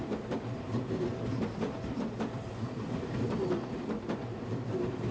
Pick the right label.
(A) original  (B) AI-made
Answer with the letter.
B